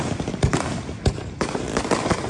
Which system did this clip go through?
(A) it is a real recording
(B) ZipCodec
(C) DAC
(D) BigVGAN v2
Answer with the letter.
D